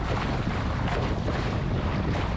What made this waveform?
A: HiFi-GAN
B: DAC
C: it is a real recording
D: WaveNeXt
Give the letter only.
C